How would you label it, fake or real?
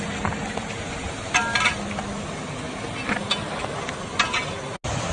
real